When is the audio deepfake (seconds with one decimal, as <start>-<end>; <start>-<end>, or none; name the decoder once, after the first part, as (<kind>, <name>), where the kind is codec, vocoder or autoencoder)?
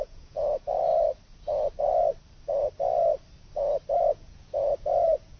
0.0-0.9 (vocoder, Vocos); 4.1-5.4